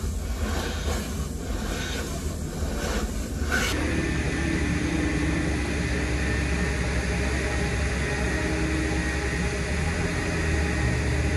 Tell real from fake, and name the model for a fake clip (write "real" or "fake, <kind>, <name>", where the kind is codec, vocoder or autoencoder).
real